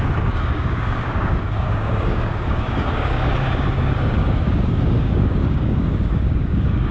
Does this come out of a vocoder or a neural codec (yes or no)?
yes